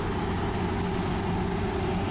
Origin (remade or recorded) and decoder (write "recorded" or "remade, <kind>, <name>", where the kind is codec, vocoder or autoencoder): recorded